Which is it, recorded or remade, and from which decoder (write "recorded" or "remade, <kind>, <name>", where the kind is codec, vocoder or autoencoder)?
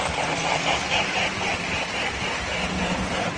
recorded